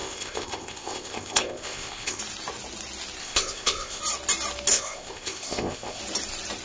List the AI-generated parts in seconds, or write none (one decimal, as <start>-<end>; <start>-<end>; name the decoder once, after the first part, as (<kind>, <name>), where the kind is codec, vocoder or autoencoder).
0.0-2.2 (codec, ZipCodec); 3.2-4.0; 4.7-6.0